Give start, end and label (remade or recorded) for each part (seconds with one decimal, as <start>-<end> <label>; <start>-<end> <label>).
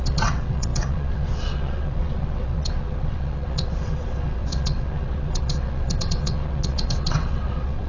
0.0-7.9 remade